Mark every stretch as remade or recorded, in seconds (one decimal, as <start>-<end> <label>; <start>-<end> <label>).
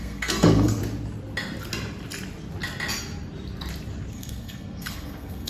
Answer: 0.0-0.8 remade; 0.8-4.1 recorded; 4.1-5.5 remade